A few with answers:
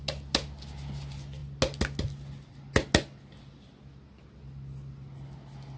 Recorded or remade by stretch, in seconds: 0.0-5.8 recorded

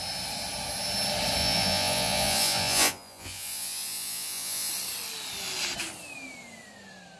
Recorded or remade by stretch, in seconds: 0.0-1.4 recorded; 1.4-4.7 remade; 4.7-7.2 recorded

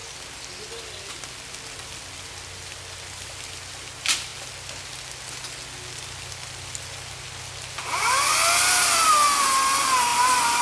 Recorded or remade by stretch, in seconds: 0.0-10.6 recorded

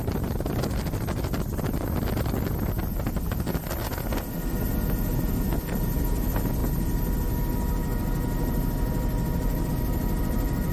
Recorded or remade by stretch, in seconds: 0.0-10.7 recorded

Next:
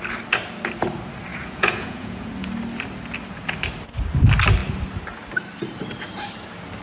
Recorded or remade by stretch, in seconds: 0.0-1.3 recorded; 1.3-2.3 remade; 2.3-6.8 recorded

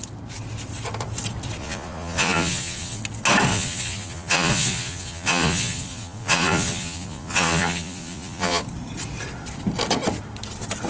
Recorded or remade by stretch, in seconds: 0.0-1.6 recorded; 1.6-3.0 remade; 3.0-3.5 recorded; 3.5-8.6 remade; 8.6-10.9 recorded

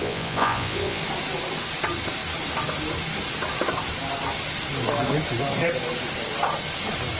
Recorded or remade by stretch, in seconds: 0.0-1.0 remade; 1.0-7.2 recorded

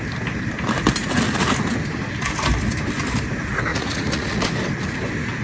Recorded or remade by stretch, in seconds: 0.0-3.7 recorded; 3.7-4.4 remade; 4.4-5.4 recorded